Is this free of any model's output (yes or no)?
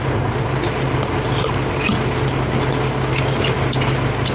yes